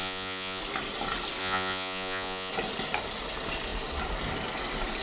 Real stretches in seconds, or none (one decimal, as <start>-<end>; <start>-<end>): 0.6-1.4; 2.5-5.0